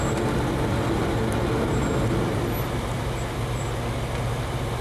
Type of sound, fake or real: real